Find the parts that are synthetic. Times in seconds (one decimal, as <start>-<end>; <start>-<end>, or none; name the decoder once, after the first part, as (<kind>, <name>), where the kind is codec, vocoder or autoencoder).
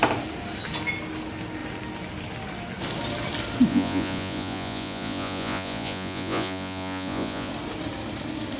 3.7-7.5 (vocoder, Vocos)